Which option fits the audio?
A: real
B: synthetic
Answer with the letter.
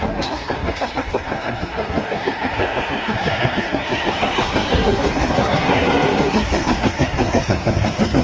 B